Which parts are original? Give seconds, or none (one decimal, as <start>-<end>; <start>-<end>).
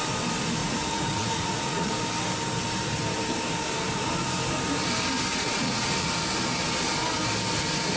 0.0-0.6; 1.9-5.3; 6.1-8.0